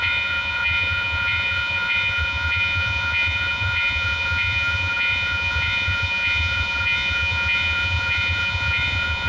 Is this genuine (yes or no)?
no